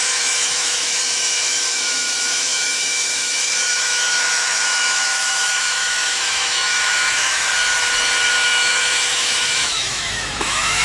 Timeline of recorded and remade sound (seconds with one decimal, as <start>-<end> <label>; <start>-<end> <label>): 0.0-7.5 remade; 7.5-8.3 recorded; 8.3-10.8 remade